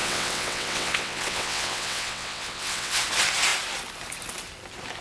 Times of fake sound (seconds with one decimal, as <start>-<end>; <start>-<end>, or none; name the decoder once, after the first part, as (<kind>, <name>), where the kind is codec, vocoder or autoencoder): 0.0-3.0 (vocoder, WaveNeXt)